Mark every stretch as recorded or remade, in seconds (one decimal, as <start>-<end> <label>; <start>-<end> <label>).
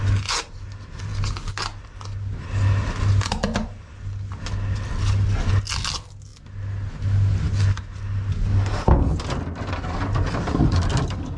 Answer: 0.0-11.4 recorded